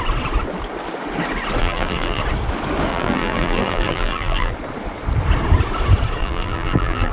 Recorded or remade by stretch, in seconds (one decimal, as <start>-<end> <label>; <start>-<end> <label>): 0.0-1.6 recorded; 1.6-2.2 remade; 2.2-2.9 recorded; 2.9-4.5 remade; 4.5-6.2 recorded; 6.2-7.1 remade